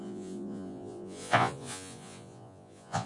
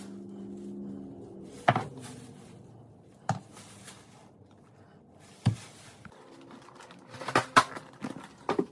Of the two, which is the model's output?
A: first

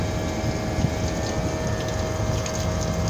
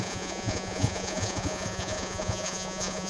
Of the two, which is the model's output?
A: second